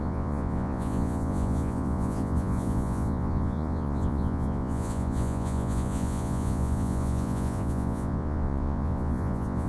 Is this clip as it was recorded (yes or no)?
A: no